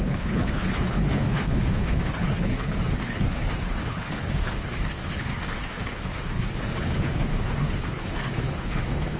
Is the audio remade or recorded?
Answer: remade